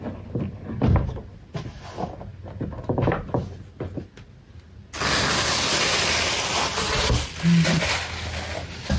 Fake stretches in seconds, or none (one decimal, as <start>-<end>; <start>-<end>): none